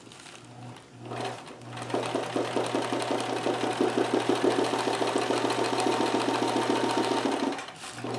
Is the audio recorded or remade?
recorded